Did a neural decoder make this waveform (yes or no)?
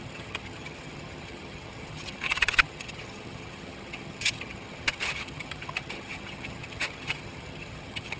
yes